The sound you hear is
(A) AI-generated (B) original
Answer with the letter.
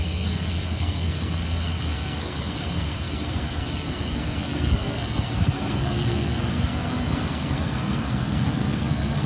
A